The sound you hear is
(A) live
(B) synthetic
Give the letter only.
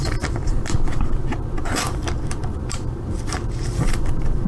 B